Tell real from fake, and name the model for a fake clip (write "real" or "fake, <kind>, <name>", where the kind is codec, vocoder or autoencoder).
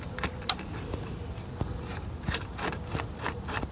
real